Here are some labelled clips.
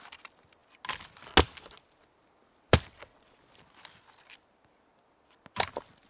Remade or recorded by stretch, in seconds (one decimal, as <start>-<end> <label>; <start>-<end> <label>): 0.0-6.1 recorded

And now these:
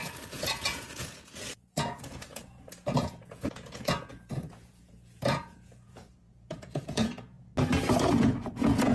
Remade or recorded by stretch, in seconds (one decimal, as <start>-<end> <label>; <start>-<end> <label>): 0.0-7.5 remade; 7.5-8.1 recorded; 8.1-8.9 remade

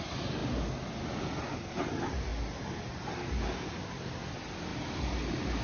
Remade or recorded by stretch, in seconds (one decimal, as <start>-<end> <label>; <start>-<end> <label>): 0.0-4.7 recorded; 4.7-5.6 remade